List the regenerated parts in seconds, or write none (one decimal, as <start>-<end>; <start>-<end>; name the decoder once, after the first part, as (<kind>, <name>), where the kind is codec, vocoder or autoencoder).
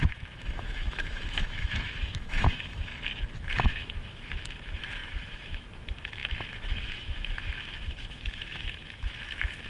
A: 0.0-2.9 (autoencoder, DAC-VAE); 3.4-9.7